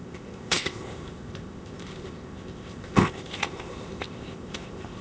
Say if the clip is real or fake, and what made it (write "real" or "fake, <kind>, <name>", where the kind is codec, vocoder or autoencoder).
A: fake, codec, ZipCodec